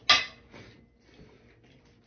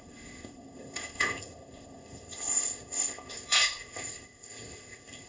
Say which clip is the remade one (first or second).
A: second